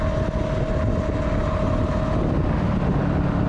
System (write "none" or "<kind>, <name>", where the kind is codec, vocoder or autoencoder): none